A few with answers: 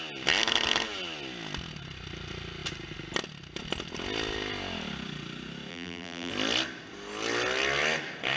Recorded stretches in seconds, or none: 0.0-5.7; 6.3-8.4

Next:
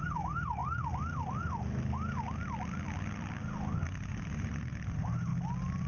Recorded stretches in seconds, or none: 0.6-4.1; 5.3-5.9

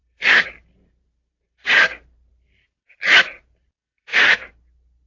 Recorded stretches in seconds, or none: 3.1-3.8; 4.5-5.1

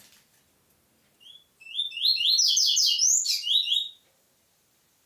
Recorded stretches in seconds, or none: 0.0-3.5

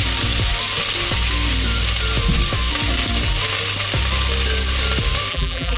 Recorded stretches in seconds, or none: 0.0-5.3

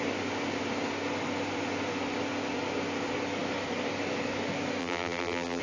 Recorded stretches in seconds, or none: 0.0-4.8

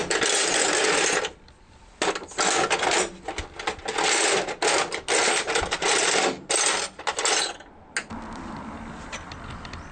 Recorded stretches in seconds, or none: 0.0-9.9